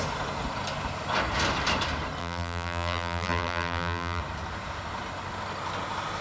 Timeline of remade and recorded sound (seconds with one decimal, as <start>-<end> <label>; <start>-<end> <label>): 0.0-2.2 recorded; 2.2-4.2 remade; 4.2-6.2 recorded